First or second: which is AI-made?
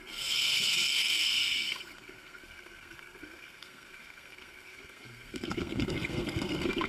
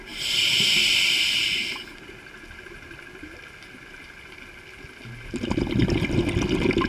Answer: first